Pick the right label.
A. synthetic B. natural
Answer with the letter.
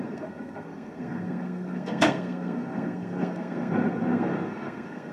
A